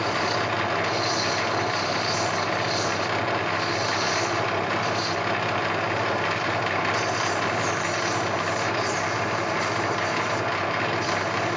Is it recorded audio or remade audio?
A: recorded